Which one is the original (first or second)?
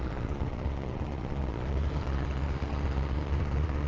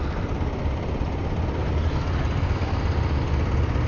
second